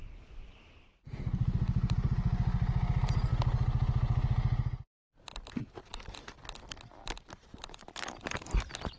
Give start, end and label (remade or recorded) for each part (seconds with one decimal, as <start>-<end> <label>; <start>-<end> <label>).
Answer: 0.0-7.5 recorded; 7.5-8.6 remade; 8.6-9.0 recorded